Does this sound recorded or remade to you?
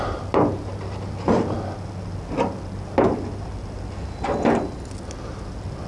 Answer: recorded